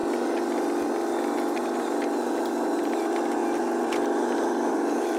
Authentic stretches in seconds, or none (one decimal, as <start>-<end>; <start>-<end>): 0.0-2.8; 3.4-4.7